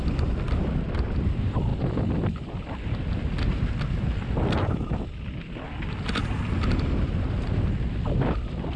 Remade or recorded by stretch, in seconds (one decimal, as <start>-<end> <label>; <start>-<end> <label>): 0.0-8.8 recorded

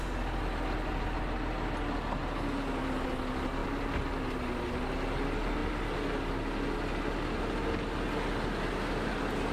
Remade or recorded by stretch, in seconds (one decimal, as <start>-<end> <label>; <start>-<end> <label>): 0.0-9.5 recorded

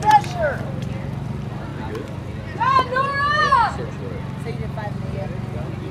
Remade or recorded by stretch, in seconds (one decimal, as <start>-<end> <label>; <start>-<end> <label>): 0.0-5.9 recorded

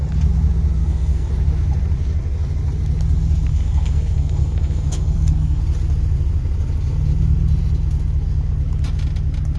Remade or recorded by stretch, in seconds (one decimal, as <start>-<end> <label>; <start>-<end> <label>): 0.0-0.8 recorded; 0.8-1.3 remade; 1.3-3.5 recorded; 3.5-5.6 remade; 5.6-9.6 recorded

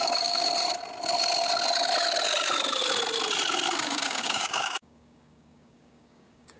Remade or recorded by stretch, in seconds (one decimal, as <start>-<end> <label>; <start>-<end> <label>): 0.0-0.5 remade; 0.5-3.8 recorded; 3.8-6.6 remade

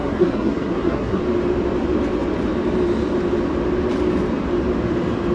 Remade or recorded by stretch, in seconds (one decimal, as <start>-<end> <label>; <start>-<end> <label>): 0.0-1.2 remade; 1.2-5.3 recorded